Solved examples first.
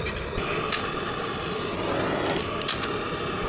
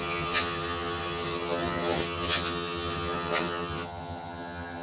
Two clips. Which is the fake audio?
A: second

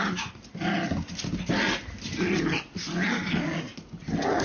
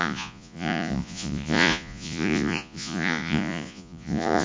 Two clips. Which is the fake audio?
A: second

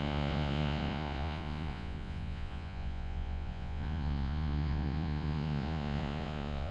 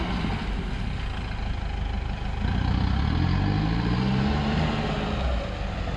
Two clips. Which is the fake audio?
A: first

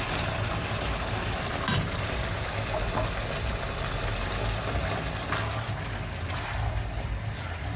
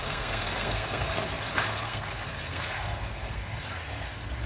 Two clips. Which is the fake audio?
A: second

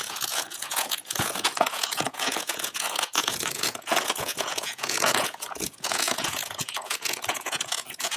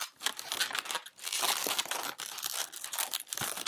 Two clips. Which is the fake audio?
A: first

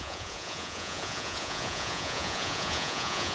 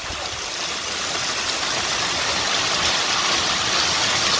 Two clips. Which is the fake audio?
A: first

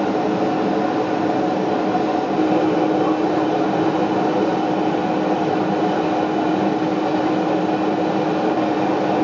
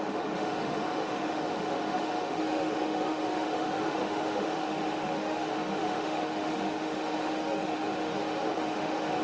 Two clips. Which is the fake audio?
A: second